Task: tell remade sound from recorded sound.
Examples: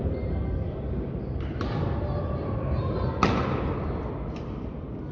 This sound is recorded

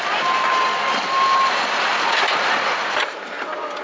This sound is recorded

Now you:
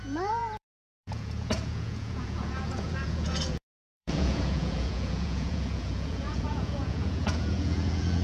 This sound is remade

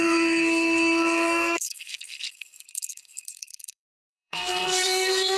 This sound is remade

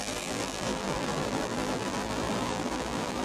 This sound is remade